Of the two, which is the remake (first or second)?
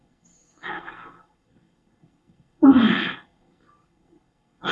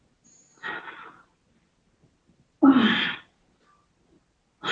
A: first